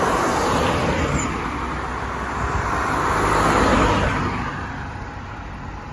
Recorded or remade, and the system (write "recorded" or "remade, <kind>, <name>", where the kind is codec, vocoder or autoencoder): recorded